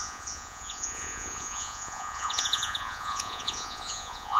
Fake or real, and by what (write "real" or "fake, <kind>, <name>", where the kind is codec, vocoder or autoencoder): fake, vocoder, Vocos